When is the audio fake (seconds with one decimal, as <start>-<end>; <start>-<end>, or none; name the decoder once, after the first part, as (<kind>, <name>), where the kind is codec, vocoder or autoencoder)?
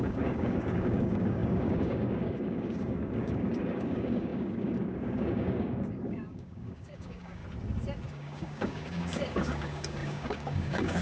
0.0-7.4 (codec, DAC); 8.1-11.0